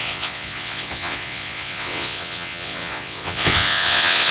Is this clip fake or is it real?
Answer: fake